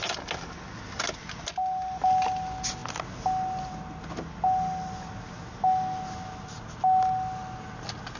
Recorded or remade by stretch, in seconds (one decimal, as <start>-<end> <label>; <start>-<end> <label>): 0.0-8.2 recorded